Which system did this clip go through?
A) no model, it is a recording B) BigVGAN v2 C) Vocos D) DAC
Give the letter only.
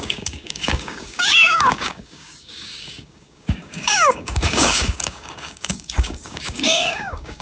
D